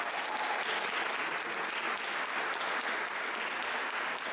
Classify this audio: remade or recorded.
recorded